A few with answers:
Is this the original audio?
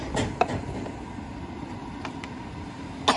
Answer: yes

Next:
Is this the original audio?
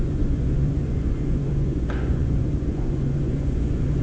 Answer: no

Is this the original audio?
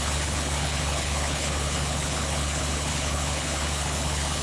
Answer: no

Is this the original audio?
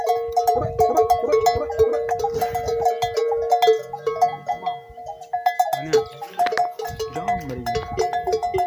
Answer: yes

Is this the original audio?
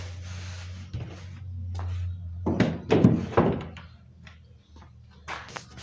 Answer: yes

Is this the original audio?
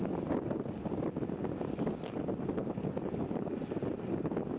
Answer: yes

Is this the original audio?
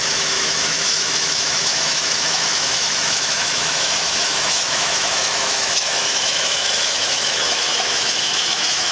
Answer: no